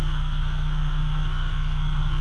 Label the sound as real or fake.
fake